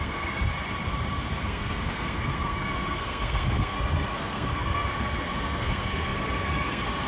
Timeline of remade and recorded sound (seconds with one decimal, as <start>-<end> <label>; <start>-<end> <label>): 0.0-0.5 remade; 0.5-1.4 recorded; 1.4-7.1 remade